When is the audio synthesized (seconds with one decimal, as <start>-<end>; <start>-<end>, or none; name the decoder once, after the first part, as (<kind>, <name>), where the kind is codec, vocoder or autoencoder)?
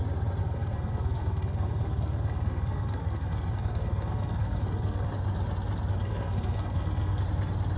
0.4-5.1 (codec, SNAC); 5.9-7.2